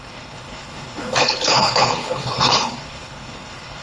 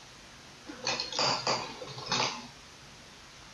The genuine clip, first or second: second